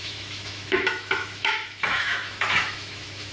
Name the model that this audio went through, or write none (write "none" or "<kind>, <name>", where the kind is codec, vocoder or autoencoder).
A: autoencoder, DAC-VAE